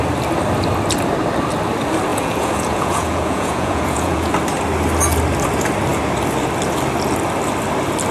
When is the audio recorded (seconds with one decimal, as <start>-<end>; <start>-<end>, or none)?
0.0-2.1; 4.3-8.1